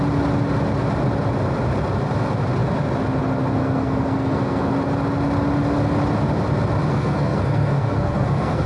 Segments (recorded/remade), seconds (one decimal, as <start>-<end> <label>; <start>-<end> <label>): 0.0-3.6 recorded; 3.6-4.7 remade; 4.7-6.9 recorded; 6.9-8.7 remade